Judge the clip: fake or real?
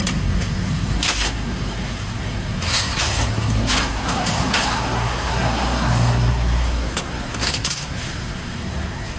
fake